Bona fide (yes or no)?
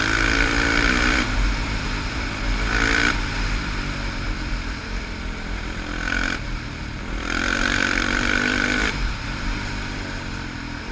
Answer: no